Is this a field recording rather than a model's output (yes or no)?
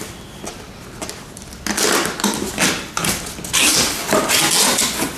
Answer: yes